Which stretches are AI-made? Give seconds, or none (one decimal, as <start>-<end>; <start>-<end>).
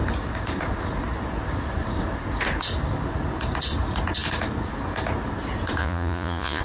5.8-6.6